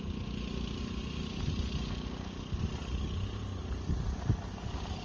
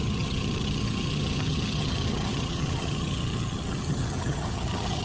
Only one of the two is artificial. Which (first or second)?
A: second